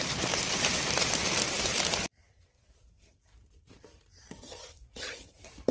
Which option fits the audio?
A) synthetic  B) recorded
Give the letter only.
A